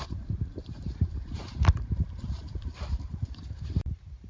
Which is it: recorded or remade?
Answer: remade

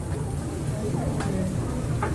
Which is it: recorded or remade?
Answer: recorded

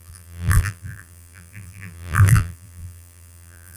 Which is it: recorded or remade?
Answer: remade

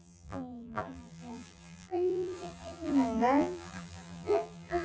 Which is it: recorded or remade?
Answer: remade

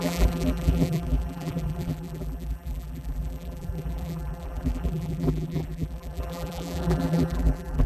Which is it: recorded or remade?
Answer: remade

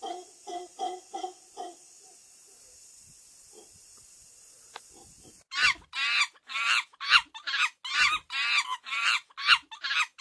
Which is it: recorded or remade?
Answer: recorded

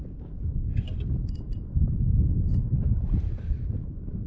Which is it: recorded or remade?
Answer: recorded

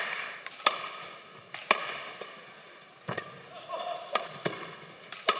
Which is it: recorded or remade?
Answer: remade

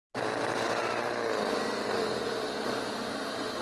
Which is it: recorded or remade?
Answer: recorded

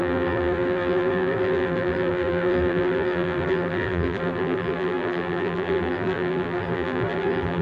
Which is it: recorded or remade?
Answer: remade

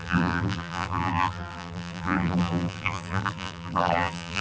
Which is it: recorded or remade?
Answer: remade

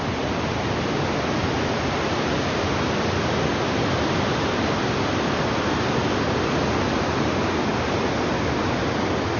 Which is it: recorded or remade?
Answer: recorded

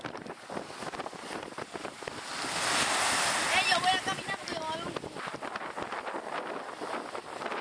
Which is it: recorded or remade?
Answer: recorded